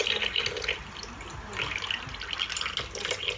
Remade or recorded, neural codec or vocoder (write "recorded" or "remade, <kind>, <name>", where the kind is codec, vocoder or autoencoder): recorded